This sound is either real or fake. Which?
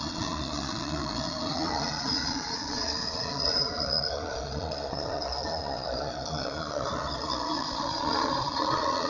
fake